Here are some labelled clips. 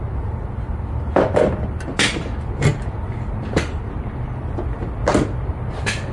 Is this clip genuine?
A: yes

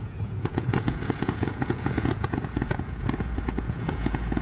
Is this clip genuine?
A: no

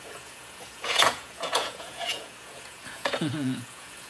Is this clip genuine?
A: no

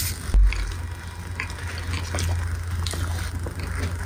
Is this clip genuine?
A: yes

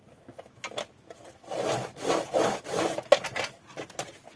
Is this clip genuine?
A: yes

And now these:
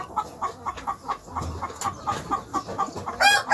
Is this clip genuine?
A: yes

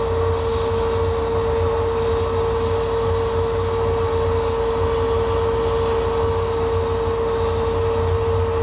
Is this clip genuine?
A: yes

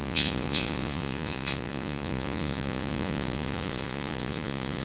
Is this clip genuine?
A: no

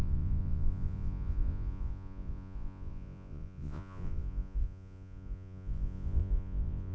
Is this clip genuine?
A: no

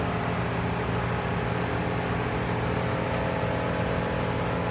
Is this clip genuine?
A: yes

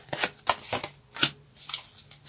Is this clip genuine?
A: yes